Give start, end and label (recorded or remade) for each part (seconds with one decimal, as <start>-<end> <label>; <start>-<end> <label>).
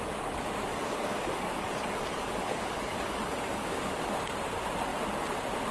0.0-0.7 recorded; 0.7-4.0 remade; 4.0-5.7 recorded